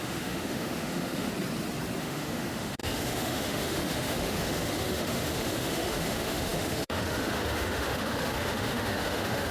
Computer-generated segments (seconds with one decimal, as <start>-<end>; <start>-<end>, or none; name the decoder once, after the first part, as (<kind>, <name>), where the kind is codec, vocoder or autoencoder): 0.0-1.3 (autoencoder, DAC-VAE); 2.0-9.5